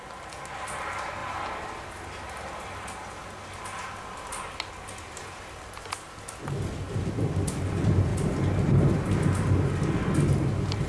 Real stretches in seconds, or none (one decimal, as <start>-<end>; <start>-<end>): 0.0-10.9

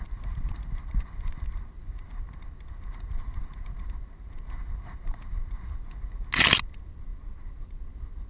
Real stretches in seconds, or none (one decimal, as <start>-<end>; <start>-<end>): 0.0-8.3

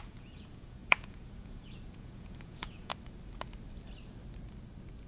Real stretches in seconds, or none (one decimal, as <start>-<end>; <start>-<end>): 2.9-5.1

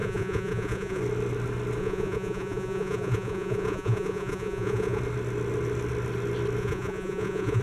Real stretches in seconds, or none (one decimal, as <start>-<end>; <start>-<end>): 1.0-1.8; 5.0-6.6

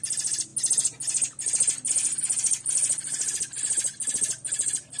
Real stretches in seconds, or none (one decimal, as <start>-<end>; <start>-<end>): 0.0-5.0

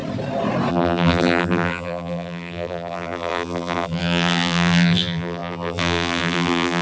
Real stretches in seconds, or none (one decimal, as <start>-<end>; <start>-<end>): 0.0-0.7

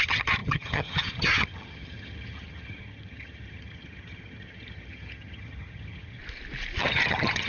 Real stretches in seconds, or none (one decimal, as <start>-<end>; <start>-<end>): 6.2-6.8

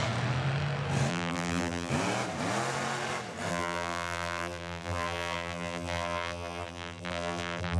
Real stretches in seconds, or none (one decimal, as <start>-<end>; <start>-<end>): 0.0-1.1; 1.9-3.5